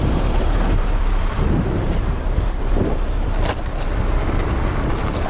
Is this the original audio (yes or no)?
no